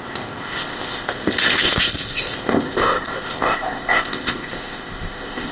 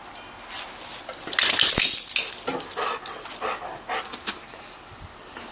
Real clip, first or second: second